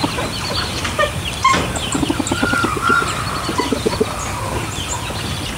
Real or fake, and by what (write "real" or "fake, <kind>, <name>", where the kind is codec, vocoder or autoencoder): real